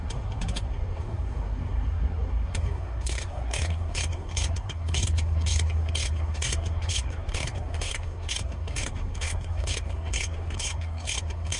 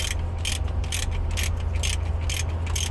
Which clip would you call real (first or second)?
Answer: second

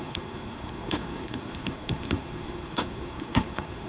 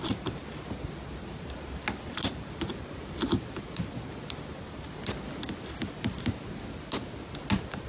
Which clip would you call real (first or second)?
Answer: second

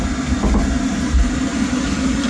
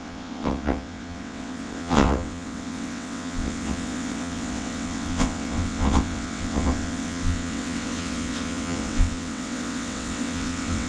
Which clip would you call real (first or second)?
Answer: first